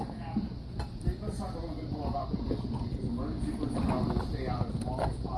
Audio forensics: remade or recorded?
recorded